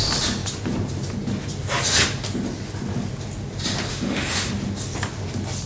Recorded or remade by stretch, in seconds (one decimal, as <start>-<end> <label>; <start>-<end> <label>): 0.0-3.9 recorded; 3.9-4.5 remade; 4.5-5.7 recorded